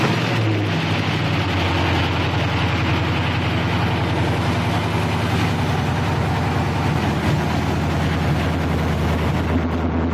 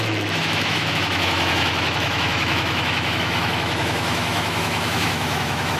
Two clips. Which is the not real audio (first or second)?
second